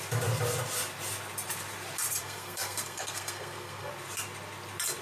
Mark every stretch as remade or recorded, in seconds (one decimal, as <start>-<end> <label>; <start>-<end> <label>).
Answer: 0.0-2.2 recorded; 2.2-3.9 remade; 3.9-5.0 recorded

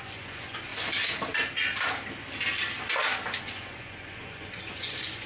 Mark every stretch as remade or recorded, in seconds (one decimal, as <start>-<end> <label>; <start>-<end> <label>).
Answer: 0.0-0.7 remade; 0.7-3.4 recorded; 3.4-5.3 remade

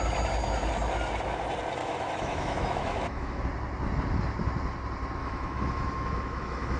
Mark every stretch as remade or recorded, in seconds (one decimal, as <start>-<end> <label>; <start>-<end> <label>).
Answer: 0.0-1.8 recorded; 1.8-3.4 remade; 3.4-5.2 recorded; 5.2-6.8 remade

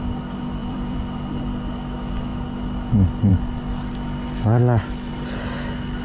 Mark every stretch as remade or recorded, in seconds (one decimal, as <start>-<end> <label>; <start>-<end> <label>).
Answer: 0.0-0.6 recorded; 0.6-1.4 remade; 1.4-6.0 recorded

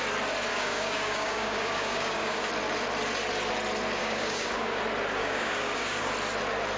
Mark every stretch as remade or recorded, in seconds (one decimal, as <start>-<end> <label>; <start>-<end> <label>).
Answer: 0.0-0.5 recorded; 0.5-2.5 remade; 2.5-4.0 recorded; 4.0-4.8 remade; 4.8-5.2 recorded; 5.2-6.1 remade; 6.1-6.8 recorded

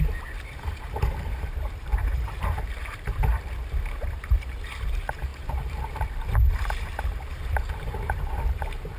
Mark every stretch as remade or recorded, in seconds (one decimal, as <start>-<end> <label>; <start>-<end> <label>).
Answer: 0.0-9.0 remade

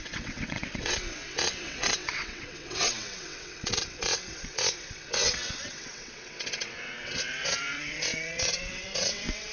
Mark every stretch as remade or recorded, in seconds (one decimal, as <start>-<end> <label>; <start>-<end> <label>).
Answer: 0.0-9.5 remade